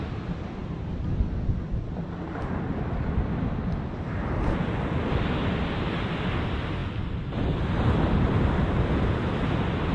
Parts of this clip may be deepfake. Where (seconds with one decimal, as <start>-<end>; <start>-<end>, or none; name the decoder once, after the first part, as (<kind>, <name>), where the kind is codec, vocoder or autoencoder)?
none